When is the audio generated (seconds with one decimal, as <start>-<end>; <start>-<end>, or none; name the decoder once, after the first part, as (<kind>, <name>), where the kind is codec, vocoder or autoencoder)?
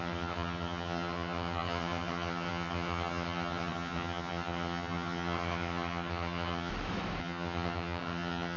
0.0-6.7 (vocoder, HiFi-GAN); 7.2-8.6